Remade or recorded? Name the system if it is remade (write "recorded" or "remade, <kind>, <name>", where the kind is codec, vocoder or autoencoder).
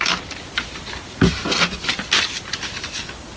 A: recorded